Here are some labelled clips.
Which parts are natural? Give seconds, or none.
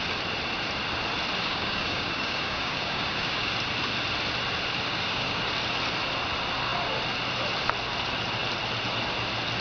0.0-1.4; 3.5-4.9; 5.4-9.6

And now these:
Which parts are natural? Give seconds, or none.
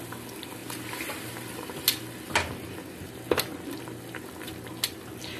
0.0-5.4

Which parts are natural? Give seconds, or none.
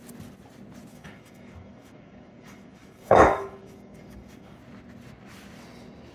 0.0-0.9; 4.6-6.1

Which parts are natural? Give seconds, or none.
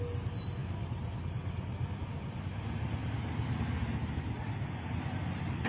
0.0-0.6; 1.1-5.7